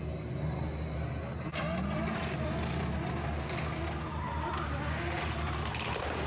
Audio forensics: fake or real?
real